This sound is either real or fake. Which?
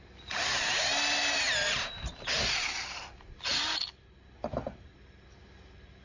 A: real